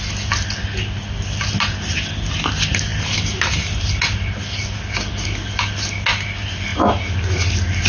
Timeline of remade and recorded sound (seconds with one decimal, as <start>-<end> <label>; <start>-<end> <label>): 0.0-7.9 recorded